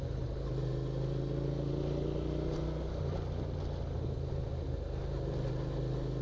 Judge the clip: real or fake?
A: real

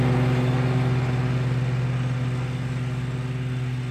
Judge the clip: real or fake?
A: real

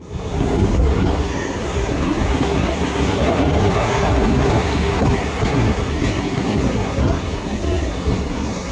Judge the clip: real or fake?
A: fake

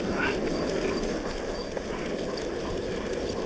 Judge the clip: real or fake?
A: real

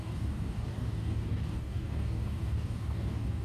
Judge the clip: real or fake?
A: fake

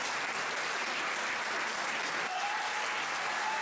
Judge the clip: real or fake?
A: real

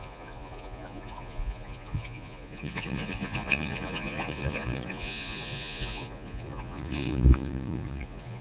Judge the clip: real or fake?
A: fake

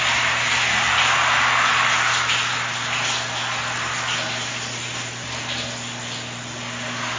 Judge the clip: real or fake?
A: real